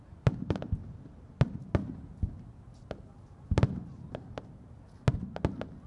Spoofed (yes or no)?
no